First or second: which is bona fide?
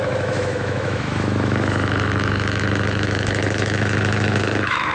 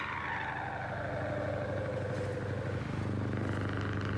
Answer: second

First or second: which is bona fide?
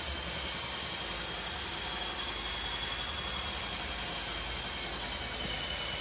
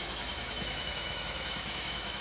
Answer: first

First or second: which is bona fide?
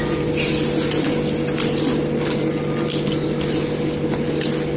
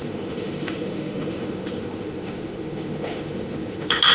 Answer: first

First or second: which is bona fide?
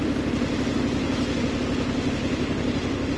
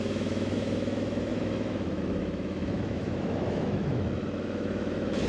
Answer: first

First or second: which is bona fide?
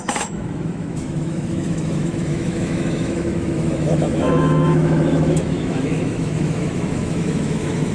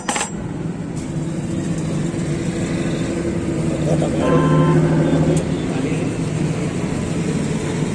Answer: second